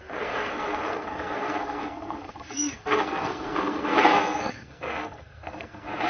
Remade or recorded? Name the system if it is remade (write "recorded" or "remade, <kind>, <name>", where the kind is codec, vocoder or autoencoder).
remade, codec, SNAC